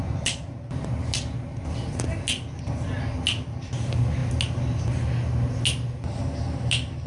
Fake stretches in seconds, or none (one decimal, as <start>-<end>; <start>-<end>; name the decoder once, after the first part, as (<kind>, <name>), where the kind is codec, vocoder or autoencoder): none